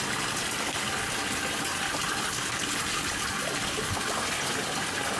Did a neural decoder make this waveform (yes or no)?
no